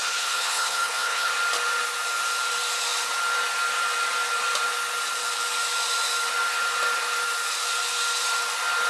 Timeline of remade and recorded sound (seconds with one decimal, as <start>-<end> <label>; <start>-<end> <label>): 0.0-1.3 remade; 1.3-8.9 recorded